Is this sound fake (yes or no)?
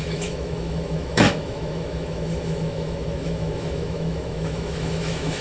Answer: yes